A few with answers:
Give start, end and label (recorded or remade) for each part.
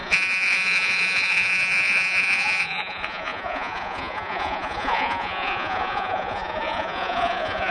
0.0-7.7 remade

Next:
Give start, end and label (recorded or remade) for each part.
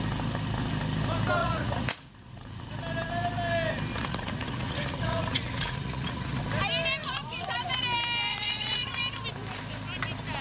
0.0-1.4 recorded; 1.4-2.7 remade; 2.7-3.9 recorded; 3.9-6.4 remade; 6.4-7.0 recorded; 7.0-7.8 remade; 7.8-8.3 recorded; 8.3-9.0 remade; 9.0-10.4 recorded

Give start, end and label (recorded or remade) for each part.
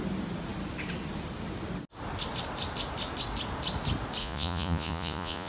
0.0-4.2 recorded; 4.2-5.5 remade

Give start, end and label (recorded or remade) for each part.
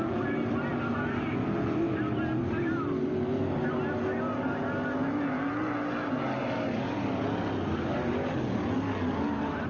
0.0-9.7 recorded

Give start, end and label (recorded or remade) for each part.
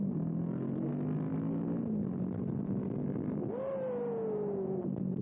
0.0-5.2 recorded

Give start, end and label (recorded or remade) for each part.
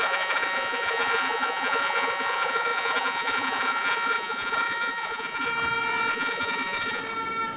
0.0-5.5 remade; 5.5-6.1 recorded; 6.1-7.0 remade; 7.0-7.6 recorded